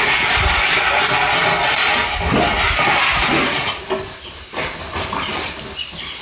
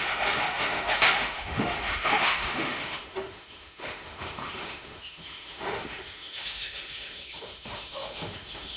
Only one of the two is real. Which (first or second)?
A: first